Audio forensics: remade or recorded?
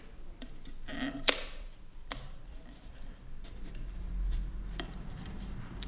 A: remade